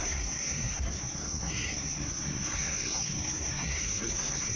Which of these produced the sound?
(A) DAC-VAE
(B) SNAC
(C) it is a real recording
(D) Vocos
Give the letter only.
B